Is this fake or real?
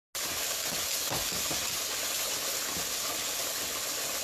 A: real